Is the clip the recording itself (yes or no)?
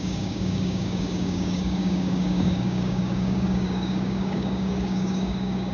no